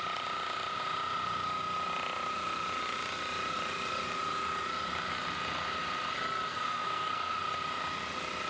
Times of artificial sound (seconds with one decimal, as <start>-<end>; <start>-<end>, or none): 6.5-7.4